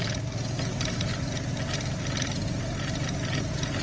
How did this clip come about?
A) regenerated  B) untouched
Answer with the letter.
B